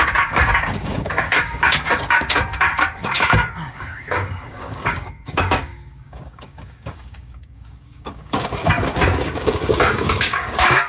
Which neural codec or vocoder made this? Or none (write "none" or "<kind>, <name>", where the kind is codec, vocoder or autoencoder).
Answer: codec, DAC